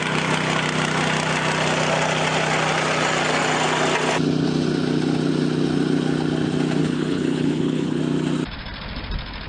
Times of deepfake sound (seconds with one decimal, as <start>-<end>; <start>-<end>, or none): 6.8-8.0